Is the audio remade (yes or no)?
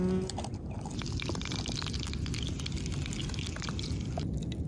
no